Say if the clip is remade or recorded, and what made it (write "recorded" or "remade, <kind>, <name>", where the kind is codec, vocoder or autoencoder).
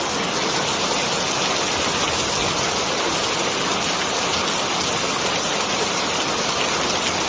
recorded